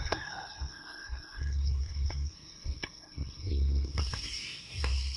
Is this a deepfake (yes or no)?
yes